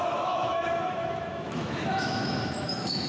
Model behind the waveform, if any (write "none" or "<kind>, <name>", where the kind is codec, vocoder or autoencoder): autoencoder, DAC-VAE